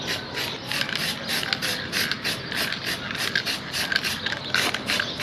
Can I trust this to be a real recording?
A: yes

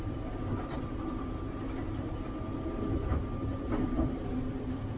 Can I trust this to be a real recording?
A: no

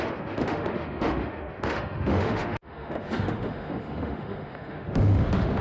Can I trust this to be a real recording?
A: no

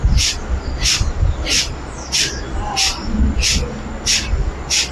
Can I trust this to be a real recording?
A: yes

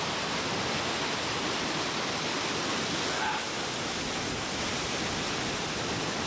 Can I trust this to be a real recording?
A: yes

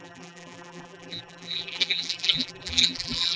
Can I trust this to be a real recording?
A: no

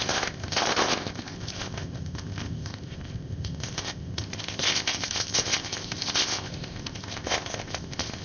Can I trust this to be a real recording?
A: no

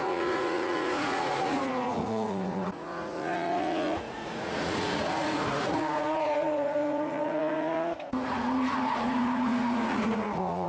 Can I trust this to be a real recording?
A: no